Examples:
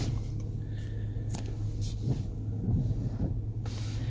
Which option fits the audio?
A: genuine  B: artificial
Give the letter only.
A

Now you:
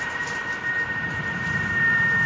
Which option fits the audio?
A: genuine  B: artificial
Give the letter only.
B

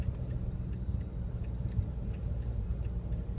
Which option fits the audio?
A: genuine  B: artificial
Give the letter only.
A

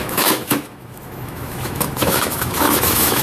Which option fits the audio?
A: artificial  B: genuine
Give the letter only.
A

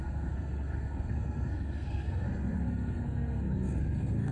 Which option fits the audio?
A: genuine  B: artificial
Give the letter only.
B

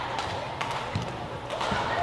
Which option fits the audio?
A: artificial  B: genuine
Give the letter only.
B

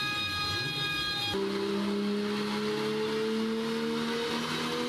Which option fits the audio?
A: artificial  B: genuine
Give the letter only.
B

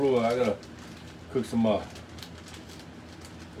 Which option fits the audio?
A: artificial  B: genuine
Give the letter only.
B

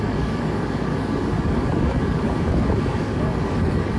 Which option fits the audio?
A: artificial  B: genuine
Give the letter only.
A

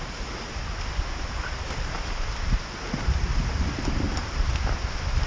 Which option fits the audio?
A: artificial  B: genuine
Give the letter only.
B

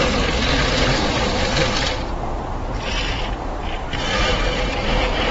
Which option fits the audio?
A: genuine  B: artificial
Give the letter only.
A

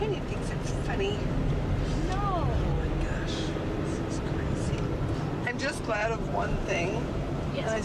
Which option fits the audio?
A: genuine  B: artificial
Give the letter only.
A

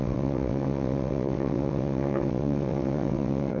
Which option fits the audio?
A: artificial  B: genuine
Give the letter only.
A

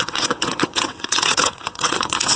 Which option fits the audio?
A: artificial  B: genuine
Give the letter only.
A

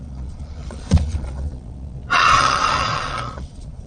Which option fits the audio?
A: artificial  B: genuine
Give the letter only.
A